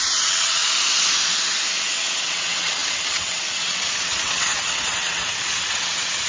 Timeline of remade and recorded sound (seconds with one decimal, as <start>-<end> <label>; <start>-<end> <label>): 0.0-0.6 remade; 0.6-1.8 recorded; 1.8-6.3 remade